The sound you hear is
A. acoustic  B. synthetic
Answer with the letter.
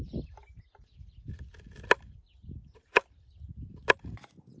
A